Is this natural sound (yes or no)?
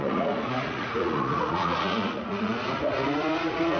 no